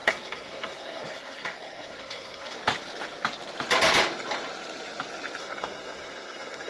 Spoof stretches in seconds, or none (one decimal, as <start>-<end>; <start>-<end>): 0.0-2.6; 5.4-6.7